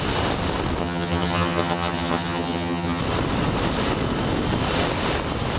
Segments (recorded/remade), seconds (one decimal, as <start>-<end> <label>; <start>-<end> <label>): 0.0-0.8 recorded; 0.8-3.0 remade; 3.0-5.6 recorded